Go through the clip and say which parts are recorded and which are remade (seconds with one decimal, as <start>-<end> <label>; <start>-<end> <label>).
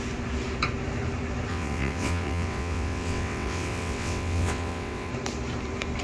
0.0-1.5 recorded; 1.5-5.1 remade; 5.1-6.0 recorded